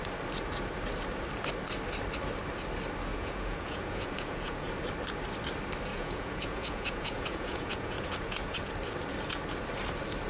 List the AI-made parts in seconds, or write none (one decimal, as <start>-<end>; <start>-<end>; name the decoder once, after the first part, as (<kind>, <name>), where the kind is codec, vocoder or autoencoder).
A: 3.1-4.7 (vocoder, Vocos); 5.9-8.7